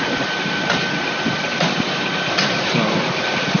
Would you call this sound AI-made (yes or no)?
no